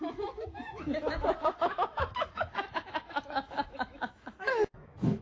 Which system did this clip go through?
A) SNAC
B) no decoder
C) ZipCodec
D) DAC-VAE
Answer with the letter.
D